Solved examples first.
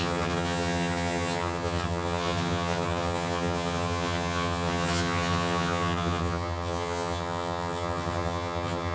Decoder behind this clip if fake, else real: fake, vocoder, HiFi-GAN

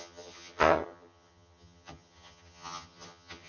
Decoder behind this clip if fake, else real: fake, vocoder, HiFi-GAN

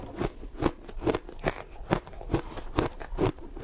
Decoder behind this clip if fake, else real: real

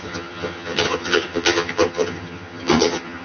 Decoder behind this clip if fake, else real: fake, vocoder, HiFi-GAN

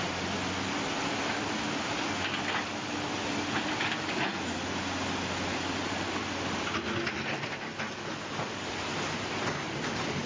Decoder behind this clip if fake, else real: real